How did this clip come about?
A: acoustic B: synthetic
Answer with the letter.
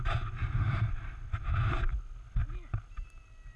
A